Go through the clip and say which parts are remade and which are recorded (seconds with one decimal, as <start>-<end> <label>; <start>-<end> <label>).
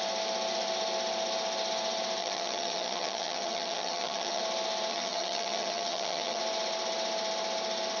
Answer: 0.0-2.2 recorded; 2.2-4.4 remade; 4.4-4.9 recorded; 4.9-6.4 remade; 6.4-8.0 recorded